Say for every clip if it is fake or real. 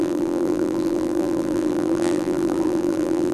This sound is fake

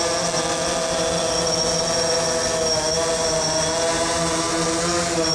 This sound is real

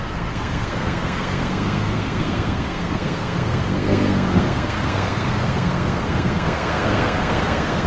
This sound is fake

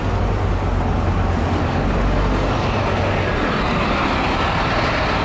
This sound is real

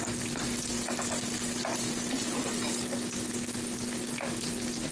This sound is real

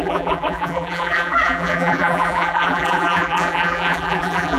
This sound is fake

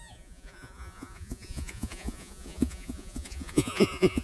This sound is fake